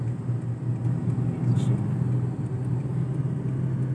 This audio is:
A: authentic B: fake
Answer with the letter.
A